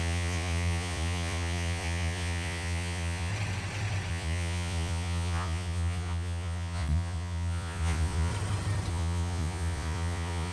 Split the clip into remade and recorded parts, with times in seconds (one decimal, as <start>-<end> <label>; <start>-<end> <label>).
0.0-3.3 remade; 3.3-4.1 recorded; 4.1-8.3 remade; 8.3-8.9 recorded; 8.9-10.5 remade